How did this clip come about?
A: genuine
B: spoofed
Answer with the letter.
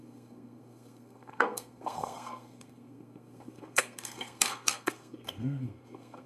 B